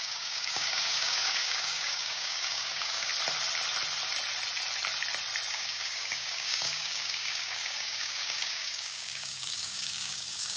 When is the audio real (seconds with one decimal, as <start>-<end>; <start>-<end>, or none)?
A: 3.1-5.5